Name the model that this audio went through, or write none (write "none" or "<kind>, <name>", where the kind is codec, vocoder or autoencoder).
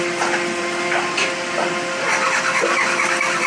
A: none